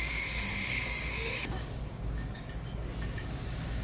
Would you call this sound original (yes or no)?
no